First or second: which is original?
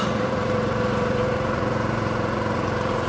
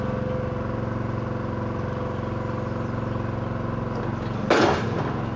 second